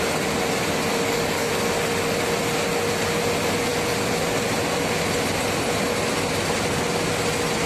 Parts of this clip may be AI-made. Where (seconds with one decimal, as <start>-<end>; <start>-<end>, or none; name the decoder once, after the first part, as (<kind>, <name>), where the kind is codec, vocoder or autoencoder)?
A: 0.9-1.5 (codec, DAC)